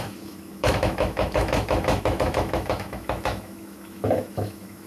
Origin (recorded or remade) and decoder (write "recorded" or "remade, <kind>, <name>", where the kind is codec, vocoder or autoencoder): remade, autoencoder, DAC-VAE